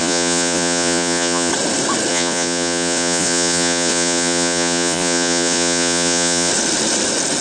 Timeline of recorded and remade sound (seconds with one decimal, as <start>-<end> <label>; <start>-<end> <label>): 0.0-1.5 remade; 1.5-2.1 recorded; 2.1-6.5 remade; 6.5-7.4 recorded